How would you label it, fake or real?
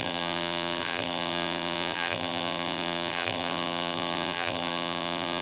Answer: fake